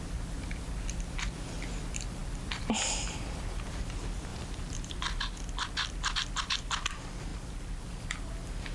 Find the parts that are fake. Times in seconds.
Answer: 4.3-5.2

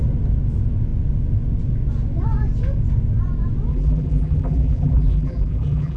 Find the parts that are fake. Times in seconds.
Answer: 3.7-6.0

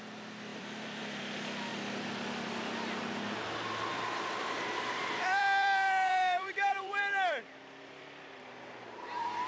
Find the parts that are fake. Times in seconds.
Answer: 0.5-1.2; 1.7-3.0; 3.9-8.8

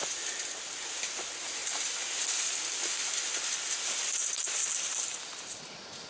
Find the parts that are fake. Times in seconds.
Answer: 1.6-2.3

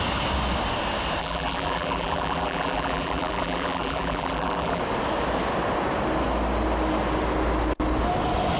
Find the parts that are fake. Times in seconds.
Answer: 1.2-4.8

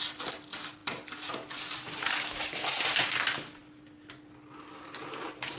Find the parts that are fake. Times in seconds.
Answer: 0.0-3.6

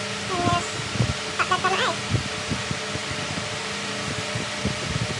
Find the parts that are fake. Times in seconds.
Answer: none

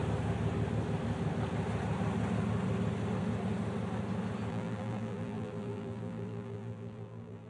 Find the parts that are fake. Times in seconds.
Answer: 4.5-7.5